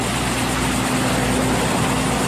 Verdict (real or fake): real